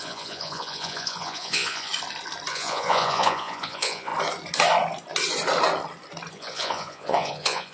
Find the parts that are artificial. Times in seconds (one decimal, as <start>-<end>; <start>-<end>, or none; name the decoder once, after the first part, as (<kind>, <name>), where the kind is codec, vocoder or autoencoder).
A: 0.0-1.9 (vocoder, Vocos); 2.5-4.1; 6.3-7.7

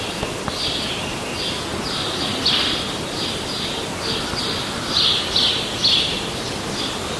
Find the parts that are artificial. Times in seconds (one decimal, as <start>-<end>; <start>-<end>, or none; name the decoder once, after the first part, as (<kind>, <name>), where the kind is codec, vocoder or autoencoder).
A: none

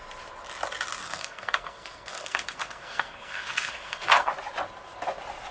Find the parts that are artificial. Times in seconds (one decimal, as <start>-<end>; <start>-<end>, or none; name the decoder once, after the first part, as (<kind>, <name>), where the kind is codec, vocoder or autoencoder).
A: 1.0-4.3 (codec, SNAC)

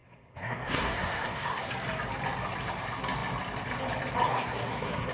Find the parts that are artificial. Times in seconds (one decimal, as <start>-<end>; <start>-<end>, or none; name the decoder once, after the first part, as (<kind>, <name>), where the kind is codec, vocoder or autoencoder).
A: 0.0-1.7 (codec, SNAC); 4.3-5.1

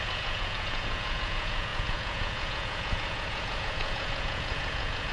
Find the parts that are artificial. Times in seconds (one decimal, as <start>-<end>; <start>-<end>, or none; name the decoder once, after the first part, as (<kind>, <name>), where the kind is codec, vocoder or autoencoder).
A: 0.0-5.1 (vocoder, Vocos)